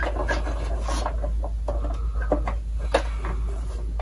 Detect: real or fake real